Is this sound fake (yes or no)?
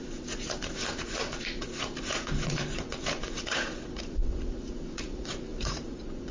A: yes